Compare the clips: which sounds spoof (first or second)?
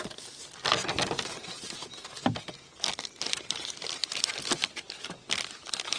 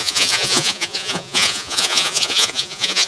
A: second